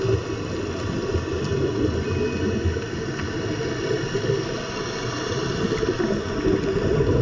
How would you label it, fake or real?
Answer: real